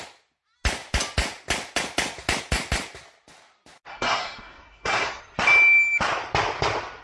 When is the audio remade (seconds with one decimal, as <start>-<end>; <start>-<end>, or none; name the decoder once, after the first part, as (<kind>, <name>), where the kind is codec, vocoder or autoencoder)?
3.9-5.2 (codec, SNAC)